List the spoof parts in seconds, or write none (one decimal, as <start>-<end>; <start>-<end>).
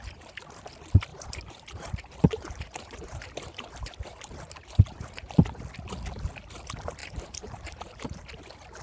1.1-5.3; 7.0-8.2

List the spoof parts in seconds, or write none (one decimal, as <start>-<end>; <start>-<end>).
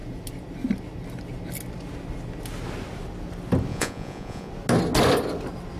3.7-4.5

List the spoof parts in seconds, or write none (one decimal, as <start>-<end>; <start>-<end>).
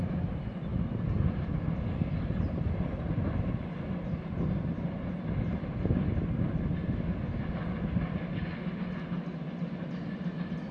none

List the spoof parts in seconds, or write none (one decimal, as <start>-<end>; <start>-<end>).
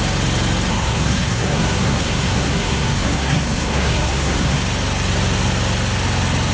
0.7-4.6